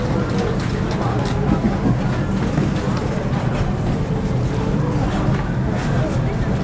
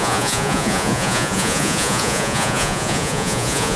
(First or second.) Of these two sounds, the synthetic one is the second